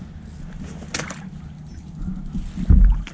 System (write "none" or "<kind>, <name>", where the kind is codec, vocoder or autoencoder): none